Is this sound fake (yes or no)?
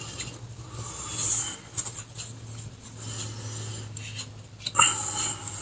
no